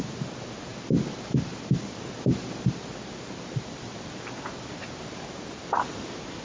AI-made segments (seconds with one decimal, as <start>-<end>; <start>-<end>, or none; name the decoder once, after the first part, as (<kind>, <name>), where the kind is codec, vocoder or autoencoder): none